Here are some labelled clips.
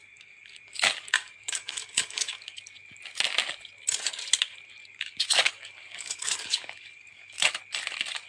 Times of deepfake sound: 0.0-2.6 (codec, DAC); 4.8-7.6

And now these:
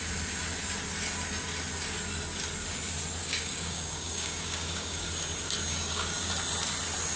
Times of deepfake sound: 3.2-5.1 (codec, DAC); 5.7-6.3